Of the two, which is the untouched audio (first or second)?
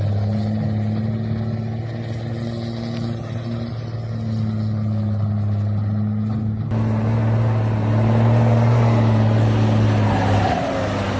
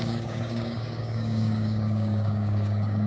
first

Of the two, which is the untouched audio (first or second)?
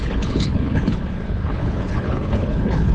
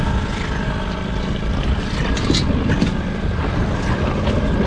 second